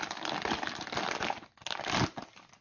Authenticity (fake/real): real